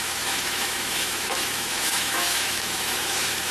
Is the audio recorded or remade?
remade